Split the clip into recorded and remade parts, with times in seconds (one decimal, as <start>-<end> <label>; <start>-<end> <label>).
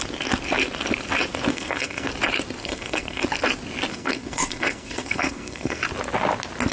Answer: 0.0-1.5 recorded; 1.5-2.1 remade; 2.1-2.6 recorded; 2.6-3.2 remade; 3.2-3.9 recorded; 3.9-5.8 remade; 5.8-6.7 recorded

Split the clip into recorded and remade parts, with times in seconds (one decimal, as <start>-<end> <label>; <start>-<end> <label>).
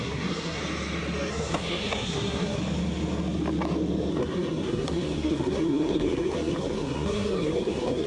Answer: 0.0-0.6 remade; 0.6-1.3 recorded; 1.3-2.6 remade; 2.6-4.1 recorded; 4.1-8.1 remade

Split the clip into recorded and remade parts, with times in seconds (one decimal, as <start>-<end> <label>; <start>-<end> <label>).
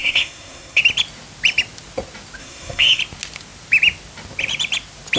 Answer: 0.0-0.8 remade; 0.8-2.4 recorded; 2.4-3.0 remade; 3.0-5.2 recorded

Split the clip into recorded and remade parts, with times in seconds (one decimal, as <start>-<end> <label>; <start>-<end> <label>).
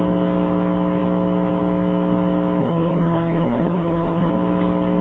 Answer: 0.0-2.6 recorded; 2.6-4.3 remade; 4.3-5.0 recorded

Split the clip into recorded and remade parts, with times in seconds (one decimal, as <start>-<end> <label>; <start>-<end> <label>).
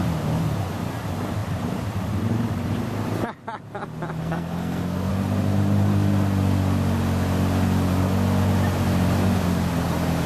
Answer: 0.0-4.2 recorded; 4.2-5.1 remade; 5.1-10.3 recorded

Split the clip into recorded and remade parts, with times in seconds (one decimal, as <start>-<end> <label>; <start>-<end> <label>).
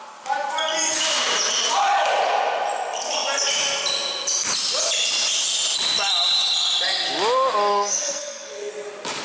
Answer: 0.0-7.7 recorded; 7.7-8.7 remade; 8.7-9.2 recorded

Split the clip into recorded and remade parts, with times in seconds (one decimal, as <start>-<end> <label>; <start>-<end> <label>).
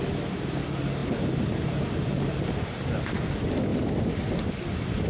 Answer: 0.0-5.1 recorded